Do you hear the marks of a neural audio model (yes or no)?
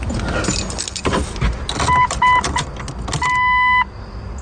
no